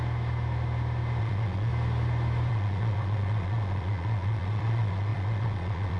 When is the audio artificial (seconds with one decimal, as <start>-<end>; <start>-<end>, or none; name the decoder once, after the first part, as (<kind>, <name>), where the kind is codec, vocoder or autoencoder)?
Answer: 1.2-1.7 (vocoder, Vocos); 2.5-6.0